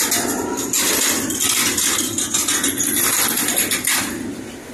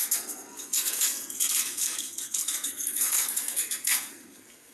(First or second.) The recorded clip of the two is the first